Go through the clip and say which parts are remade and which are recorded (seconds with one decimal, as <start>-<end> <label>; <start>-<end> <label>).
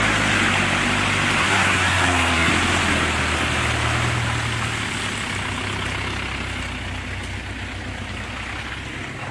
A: 0.0-1.4 recorded; 1.4-2.5 remade; 2.5-9.3 recorded